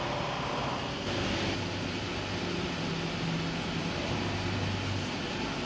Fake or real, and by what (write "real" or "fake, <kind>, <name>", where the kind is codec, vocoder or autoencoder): real